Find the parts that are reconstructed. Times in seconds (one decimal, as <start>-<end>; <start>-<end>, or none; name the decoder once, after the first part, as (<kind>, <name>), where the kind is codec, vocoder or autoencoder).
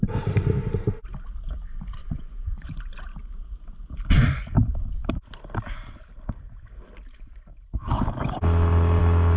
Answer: 2.0-2.7 (vocoder, Vocos)